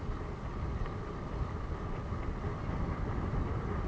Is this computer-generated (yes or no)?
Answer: no